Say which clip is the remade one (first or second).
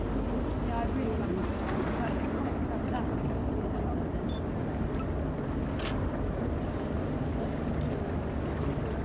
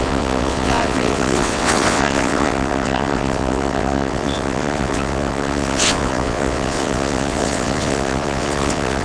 second